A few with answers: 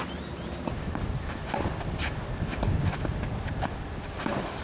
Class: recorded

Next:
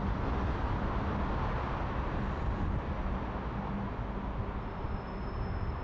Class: recorded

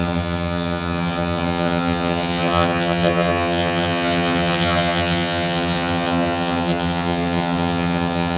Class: remade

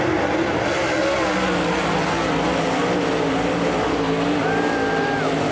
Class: recorded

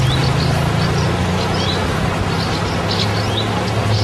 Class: recorded